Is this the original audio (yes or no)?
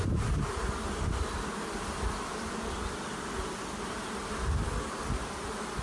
yes